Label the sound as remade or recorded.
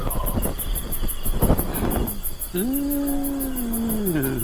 recorded